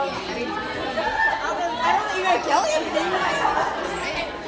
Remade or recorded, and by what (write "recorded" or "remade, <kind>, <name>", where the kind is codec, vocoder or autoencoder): recorded